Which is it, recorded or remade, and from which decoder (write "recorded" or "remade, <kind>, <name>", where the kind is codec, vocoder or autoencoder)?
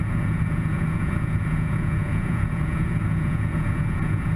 remade, vocoder, Vocos